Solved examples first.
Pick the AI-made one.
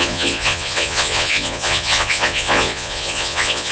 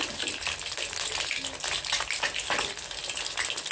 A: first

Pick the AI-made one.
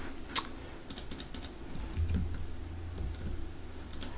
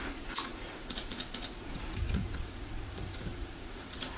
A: second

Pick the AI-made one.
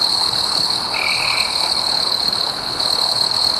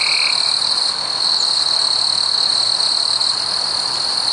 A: first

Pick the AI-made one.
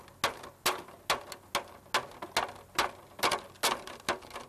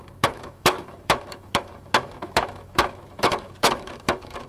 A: second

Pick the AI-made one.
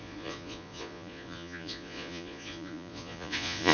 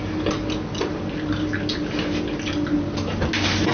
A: first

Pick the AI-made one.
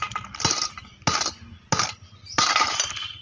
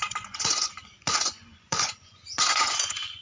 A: second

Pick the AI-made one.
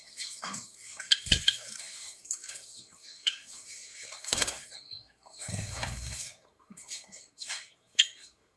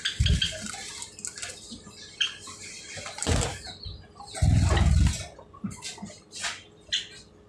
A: first